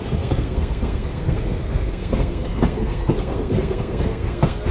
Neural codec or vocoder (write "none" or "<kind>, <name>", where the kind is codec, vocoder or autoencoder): codec, SNAC